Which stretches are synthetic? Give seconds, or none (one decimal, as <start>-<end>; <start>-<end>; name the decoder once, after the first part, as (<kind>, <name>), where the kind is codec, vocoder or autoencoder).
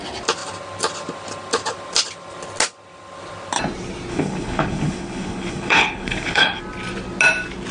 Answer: 4.1-6.6 (codec, HILCodec)